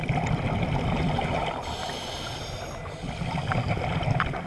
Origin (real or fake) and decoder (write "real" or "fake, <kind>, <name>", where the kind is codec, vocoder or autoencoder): real